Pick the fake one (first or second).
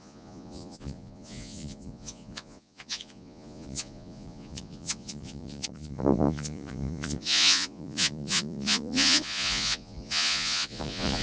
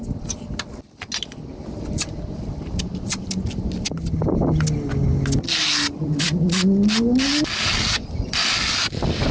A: first